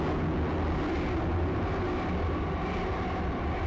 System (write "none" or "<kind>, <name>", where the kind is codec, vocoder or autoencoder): none